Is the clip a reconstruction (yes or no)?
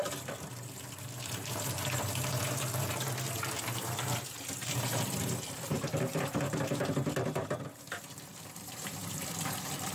yes